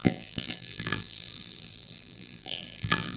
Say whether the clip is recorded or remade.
remade